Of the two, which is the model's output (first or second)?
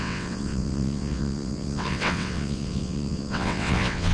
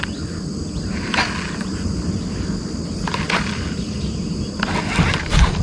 first